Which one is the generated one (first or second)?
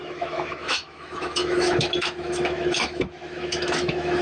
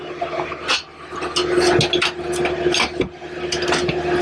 first